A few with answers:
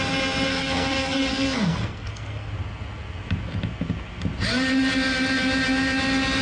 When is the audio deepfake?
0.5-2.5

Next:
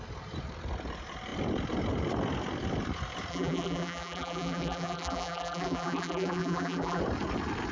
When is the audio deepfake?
3.3-7.0

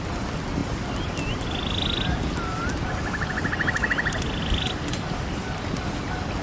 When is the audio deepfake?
none

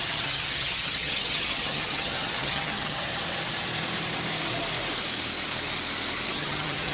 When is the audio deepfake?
0.0-3.1; 6.3-6.9

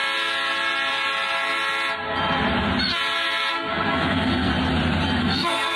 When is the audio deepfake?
3.5-4.5; 5.2-5.8

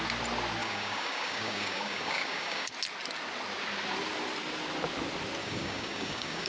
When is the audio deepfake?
0.6-2.7; 5.4-6.5

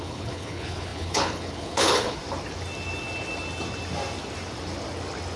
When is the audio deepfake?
0.0-2.2